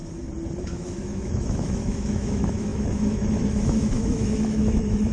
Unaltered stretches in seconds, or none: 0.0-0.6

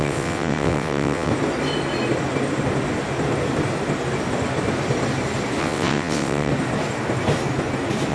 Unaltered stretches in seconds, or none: 1.3-5.6; 6.5-8.1

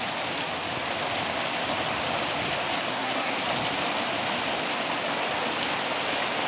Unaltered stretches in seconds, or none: 0.0-2.9; 3.4-6.5

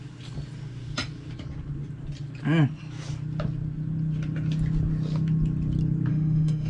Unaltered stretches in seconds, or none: 0.0-6.1

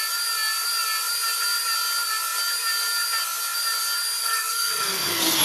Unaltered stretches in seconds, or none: 0.0-4.2

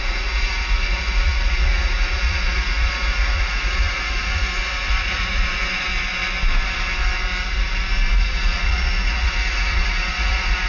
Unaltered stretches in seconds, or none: 5.9-8.2

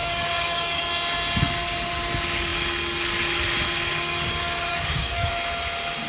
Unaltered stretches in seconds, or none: 0.8-4.7; 5.3-6.1